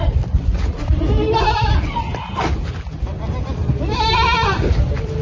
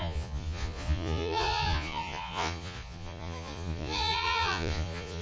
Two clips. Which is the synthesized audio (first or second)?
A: second